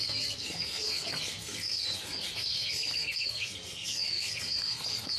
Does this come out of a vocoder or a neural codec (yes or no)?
yes